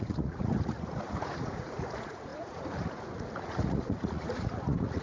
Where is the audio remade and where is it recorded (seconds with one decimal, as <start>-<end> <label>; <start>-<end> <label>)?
0.0-5.0 remade